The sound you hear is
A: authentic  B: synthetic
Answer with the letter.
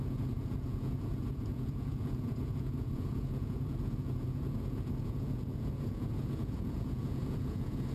B